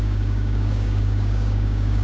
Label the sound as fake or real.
fake